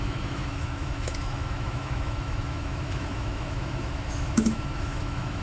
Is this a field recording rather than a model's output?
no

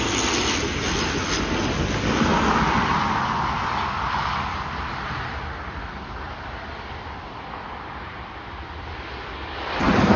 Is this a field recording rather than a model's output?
yes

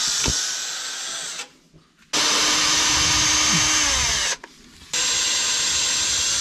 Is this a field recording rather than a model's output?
yes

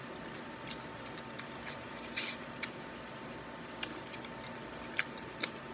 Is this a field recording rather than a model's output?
yes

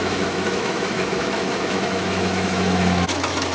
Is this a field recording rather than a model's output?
no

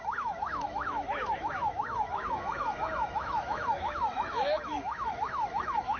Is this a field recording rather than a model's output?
no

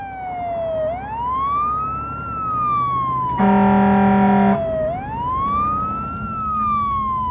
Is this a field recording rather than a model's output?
yes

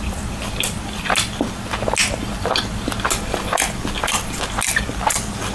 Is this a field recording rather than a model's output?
yes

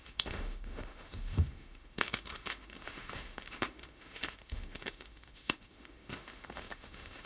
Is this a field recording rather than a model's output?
no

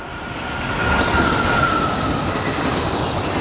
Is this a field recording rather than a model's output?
yes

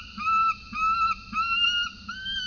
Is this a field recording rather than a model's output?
yes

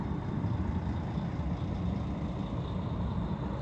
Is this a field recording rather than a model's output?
yes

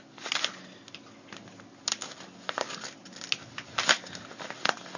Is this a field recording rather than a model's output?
yes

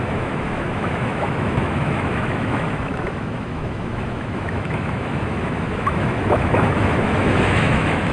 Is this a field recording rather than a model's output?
no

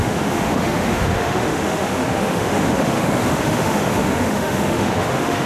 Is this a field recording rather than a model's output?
no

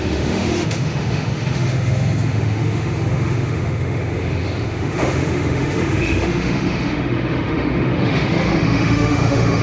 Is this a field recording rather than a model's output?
no